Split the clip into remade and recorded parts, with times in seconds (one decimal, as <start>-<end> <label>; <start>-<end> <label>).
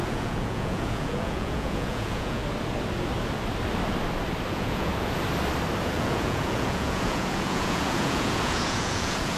0.0-2.4 remade; 2.4-4.5 recorded; 4.5-4.9 remade; 4.9-5.8 recorded; 5.8-9.4 remade